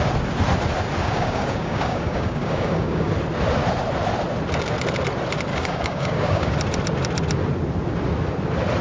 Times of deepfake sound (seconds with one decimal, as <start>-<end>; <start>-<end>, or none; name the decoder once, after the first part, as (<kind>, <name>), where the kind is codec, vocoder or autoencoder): 1.0-3.1 (codec, DAC); 5.5-6.5